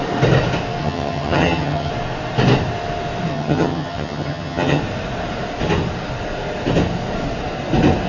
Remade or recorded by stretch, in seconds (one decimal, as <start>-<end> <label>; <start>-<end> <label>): 0.0-0.8 recorded; 0.8-1.9 remade; 1.9-3.3 recorded; 3.3-4.8 remade; 4.8-8.1 recorded